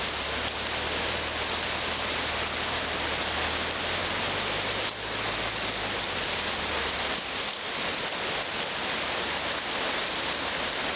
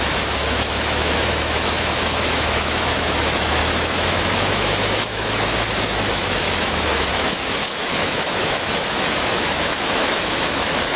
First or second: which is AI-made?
second